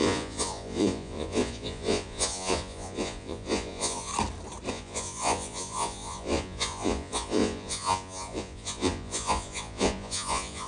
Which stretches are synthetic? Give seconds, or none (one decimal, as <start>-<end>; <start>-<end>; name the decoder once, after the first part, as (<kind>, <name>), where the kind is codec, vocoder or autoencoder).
0.0-4.1 (vocoder, Vocos); 4.7-10.7